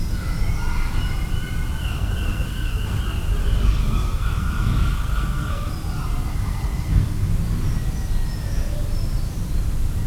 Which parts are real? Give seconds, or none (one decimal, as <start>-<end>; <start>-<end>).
0.0-1.8; 3.0-3.4; 5.7-6.3; 7.3-10.1